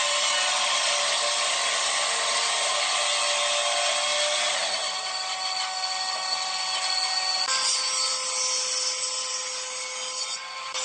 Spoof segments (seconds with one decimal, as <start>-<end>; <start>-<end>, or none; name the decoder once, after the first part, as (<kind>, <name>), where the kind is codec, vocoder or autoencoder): none